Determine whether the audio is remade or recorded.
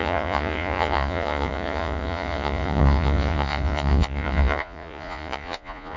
remade